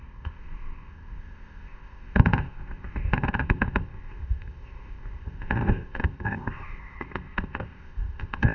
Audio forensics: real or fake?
fake